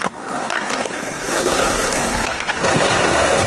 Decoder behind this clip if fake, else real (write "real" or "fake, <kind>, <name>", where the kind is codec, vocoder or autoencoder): fake, codec, SNAC